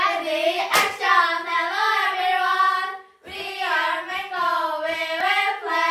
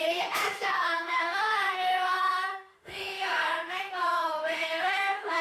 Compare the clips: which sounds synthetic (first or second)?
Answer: second